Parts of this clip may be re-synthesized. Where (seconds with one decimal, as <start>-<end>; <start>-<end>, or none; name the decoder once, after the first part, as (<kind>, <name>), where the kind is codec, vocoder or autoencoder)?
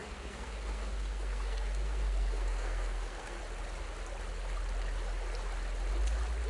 0.0-3.4 (codec, SNAC)